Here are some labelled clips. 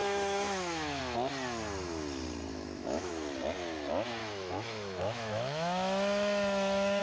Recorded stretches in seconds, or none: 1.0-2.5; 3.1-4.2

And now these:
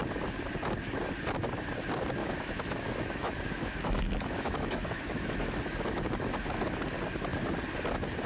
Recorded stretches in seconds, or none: 0.0-2.2; 5.6-8.3

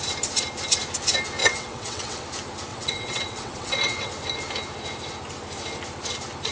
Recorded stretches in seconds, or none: 0.0-1.4; 2.2-2.7; 4.1-6.5